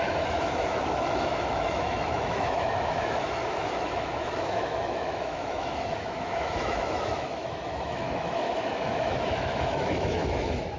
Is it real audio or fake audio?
fake